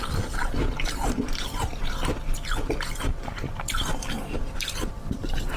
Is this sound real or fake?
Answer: real